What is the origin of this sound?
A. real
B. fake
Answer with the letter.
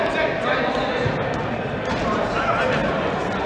A